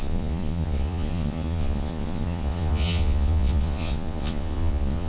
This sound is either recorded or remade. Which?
remade